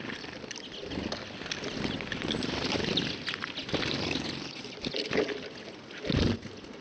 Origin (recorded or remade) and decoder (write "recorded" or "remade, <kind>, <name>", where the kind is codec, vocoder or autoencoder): recorded